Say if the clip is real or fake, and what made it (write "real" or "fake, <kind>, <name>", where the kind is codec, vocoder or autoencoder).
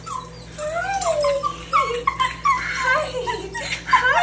real